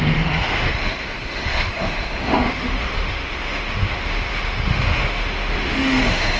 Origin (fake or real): fake